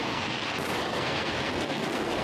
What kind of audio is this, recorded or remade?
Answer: remade